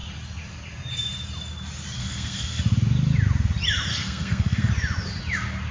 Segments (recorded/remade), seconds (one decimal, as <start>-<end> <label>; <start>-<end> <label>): 0.0-2.0 recorded; 2.0-2.6 remade; 2.6-3.9 recorded; 3.9-4.7 remade; 4.7-5.7 recorded